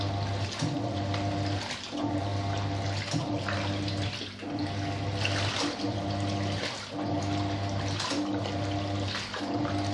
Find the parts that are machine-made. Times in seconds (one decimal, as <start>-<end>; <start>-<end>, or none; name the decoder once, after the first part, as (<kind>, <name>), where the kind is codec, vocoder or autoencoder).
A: none

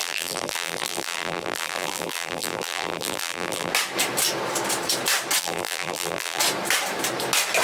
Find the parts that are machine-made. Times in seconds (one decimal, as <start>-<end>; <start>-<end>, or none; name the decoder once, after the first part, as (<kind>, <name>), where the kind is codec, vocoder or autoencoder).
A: 0.0-3.7 (vocoder, BigVGAN v2); 5.4-6.4

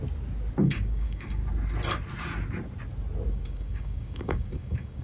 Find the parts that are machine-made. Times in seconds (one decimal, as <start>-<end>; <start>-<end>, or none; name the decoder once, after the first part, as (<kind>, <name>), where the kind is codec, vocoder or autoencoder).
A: 0.6-1.4 (codec, DAC); 3.3-5.0

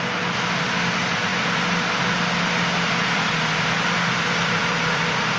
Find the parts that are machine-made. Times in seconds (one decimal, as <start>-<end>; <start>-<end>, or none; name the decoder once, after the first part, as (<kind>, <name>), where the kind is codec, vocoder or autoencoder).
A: none